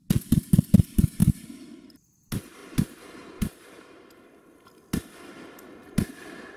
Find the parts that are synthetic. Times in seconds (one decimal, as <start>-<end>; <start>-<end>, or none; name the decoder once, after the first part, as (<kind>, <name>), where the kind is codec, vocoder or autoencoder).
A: none